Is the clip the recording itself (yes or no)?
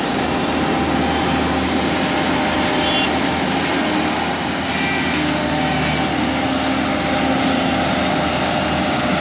yes